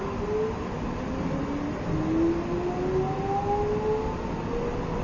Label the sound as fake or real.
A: real